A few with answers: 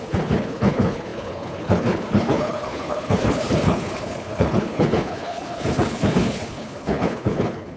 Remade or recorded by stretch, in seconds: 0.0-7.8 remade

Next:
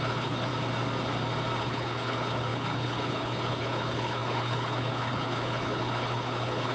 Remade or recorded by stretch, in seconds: 0.0-0.5 remade; 0.5-1.6 recorded; 1.6-6.7 remade

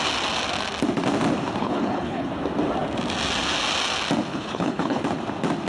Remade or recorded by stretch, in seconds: 0.0-1.6 recorded; 1.6-2.3 remade; 2.3-4.3 recorded; 4.3-5.0 remade; 5.0-5.7 recorded